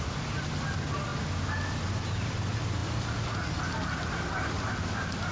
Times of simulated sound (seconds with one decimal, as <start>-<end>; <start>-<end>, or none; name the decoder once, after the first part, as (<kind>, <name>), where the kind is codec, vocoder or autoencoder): none